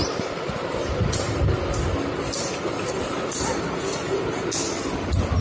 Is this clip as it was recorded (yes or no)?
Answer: yes